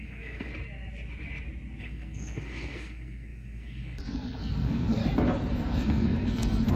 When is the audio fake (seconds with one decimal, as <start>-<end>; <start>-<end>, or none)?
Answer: 0.0-0.5; 1.8-5.0; 5.5-6.8